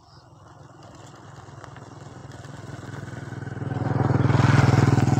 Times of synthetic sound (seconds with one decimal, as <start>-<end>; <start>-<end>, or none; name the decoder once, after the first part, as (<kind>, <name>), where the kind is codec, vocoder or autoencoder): none